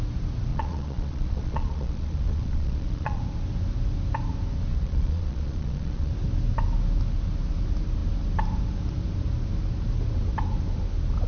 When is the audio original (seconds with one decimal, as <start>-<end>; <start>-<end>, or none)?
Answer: 0.0-0.5; 3.2-4.7; 6.1-11.3